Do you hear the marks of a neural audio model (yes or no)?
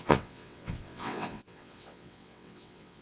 yes